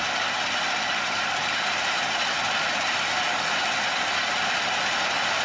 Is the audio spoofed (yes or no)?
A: no